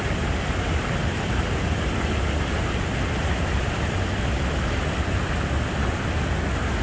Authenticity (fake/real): real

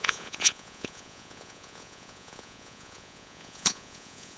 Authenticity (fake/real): fake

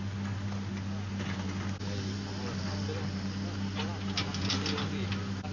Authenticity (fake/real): real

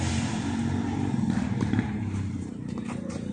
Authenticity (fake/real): fake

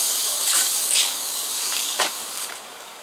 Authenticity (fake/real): fake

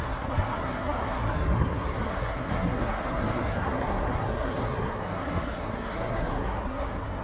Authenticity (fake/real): fake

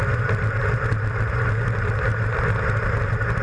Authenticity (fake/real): real